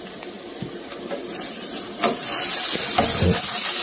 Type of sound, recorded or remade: recorded